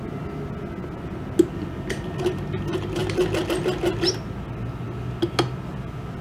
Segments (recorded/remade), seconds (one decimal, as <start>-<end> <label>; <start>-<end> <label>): 0.0-6.2 recorded

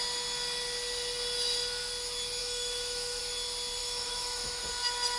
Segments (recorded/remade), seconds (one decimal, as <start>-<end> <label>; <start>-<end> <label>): 0.0-2.4 recorded; 2.4-3.2 remade; 3.2-3.8 recorded; 3.8-4.6 remade; 4.6-5.2 recorded

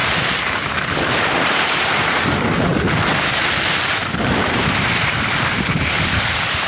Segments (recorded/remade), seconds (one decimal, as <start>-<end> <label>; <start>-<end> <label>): 0.0-2.7 remade; 2.7-4.3 recorded; 4.3-6.7 remade

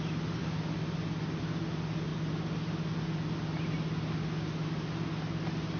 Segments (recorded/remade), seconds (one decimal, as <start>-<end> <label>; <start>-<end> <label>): 0.0-5.8 recorded